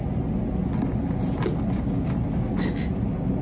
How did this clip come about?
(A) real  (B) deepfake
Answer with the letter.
A